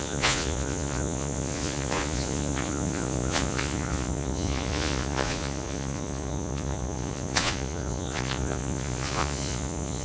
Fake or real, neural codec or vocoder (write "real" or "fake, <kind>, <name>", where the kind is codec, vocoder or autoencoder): fake, vocoder, Vocos